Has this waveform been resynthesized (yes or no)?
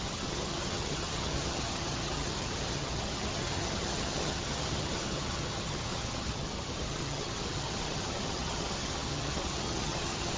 yes